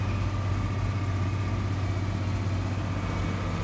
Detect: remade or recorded recorded